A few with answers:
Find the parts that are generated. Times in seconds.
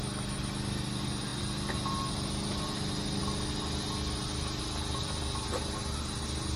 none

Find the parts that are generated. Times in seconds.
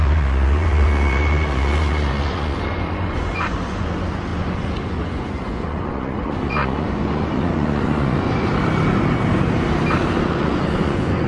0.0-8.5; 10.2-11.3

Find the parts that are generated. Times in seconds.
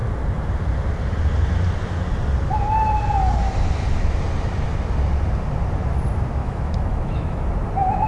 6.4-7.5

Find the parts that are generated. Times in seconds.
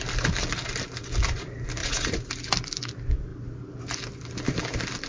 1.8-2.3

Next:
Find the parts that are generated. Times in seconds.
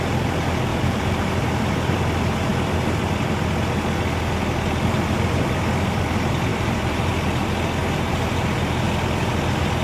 0.7-2.0; 6.5-7.1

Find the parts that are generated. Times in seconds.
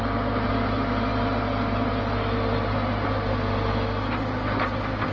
none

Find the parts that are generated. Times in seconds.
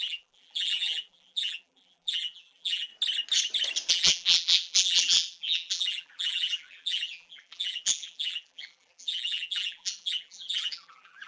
0.0-2.9; 3.9-11.3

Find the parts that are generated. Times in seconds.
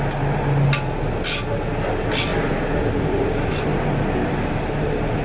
none